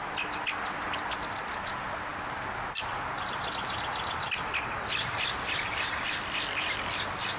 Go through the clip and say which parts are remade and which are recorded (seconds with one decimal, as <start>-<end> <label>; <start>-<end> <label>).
0.0-7.4 recorded